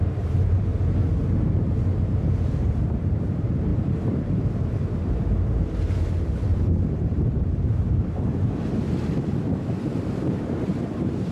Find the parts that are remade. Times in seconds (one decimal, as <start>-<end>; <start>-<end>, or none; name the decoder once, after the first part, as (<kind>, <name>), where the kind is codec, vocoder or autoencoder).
0.0-0.7 (vocoder, BigVGAN v2); 2.1-11.3